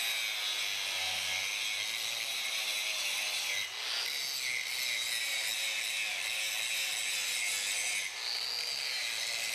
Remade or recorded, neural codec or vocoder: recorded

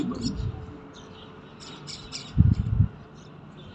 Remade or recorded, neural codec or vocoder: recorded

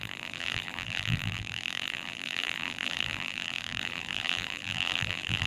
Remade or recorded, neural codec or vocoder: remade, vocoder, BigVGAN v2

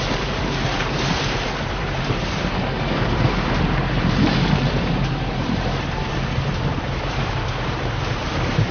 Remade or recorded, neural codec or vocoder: remade, vocoder, BigVGAN v2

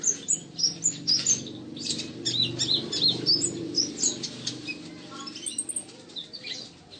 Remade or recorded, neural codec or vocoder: recorded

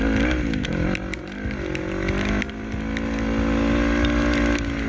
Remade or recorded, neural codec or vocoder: recorded